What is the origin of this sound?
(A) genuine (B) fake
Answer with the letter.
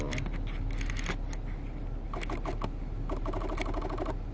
A